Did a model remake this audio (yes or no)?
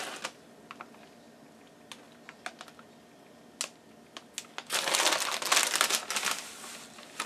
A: no